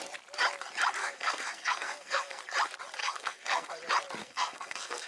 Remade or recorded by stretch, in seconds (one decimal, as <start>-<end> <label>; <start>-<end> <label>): 0.0-1.0 recorded; 1.0-2.4 remade; 2.4-3.0 recorded; 3.0-3.7 remade; 3.7-4.2 recorded; 4.2-5.1 remade